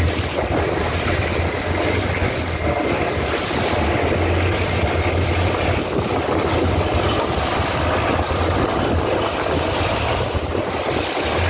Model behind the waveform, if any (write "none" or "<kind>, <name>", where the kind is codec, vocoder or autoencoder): none